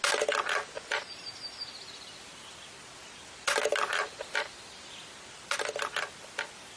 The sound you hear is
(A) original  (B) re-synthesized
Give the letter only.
A